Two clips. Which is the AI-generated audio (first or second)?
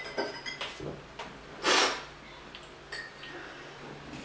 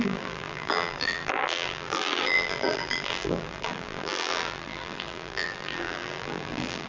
second